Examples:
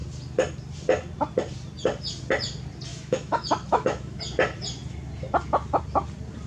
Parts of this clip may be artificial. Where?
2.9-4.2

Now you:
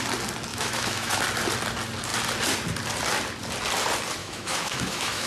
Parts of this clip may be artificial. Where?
0.5-1.2; 4.2-5.3